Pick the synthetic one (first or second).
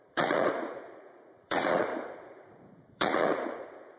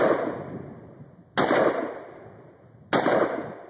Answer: first